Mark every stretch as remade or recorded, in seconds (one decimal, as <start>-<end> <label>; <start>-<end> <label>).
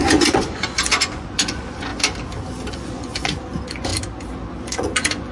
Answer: 0.0-1.9 remade; 1.9-2.7 recorded; 2.7-3.9 remade; 3.9-4.6 recorded; 4.6-5.3 remade